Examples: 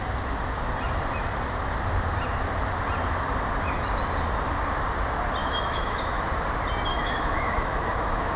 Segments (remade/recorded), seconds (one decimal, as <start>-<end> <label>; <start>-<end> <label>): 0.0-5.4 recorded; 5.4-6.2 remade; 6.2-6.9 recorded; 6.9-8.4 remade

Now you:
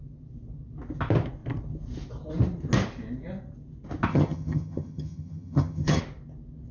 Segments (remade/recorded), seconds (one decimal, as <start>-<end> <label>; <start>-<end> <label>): 0.0-4.1 recorded; 4.1-6.0 remade; 6.0-6.7 recorded

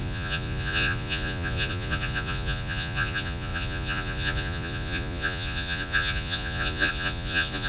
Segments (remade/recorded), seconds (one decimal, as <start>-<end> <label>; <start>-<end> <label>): 0.0-7.7 remade

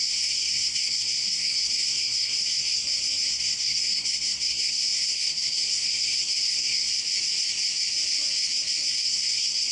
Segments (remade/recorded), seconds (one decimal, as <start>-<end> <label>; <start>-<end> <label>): 0.0-2.8 remade; 2.8-3.3 recorded; 3.3-6.9 remade; 6.9-8.9 recorded; 8.9-9.7 remade

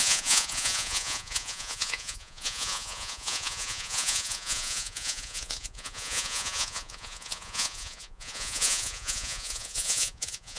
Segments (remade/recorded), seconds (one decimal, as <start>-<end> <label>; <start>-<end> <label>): 0.0-10.6 remade

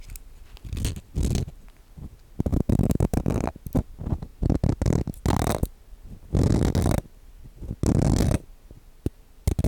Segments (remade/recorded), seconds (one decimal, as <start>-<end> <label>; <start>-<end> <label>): 0.0-2.5 recorded; 2.5-3.2 remade; 3.2-9.7 recorded